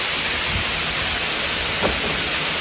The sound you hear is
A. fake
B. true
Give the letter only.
B